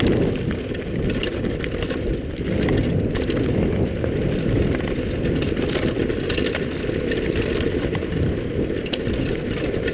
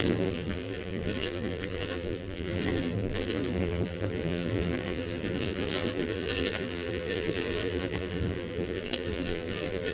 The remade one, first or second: second